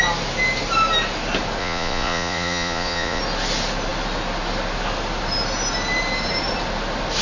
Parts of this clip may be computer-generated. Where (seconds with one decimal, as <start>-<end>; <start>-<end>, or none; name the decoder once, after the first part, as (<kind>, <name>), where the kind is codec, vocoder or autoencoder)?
1.6-3.2 (vocoder, Vocos)